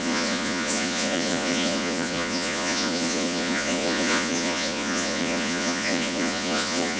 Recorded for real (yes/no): no